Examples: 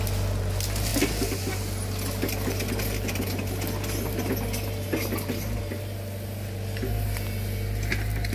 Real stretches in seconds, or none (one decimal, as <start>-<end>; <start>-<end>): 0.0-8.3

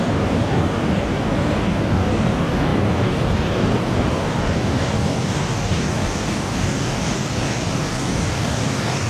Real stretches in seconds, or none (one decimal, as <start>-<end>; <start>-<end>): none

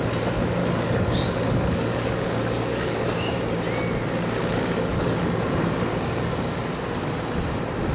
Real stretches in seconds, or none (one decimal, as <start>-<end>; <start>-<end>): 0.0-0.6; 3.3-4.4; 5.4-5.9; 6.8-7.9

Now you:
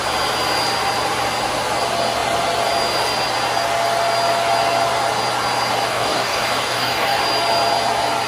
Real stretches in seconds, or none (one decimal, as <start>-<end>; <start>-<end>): 0.0-5.9; 7.2-8.3

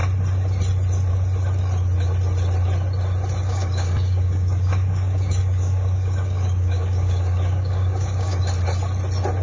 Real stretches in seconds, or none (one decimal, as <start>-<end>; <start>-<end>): 0.0-3.4; 8.4-9.4

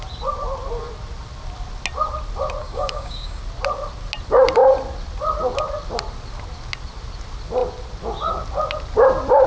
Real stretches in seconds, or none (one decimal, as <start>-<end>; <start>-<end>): 0.0-2.6; 3.4-9.5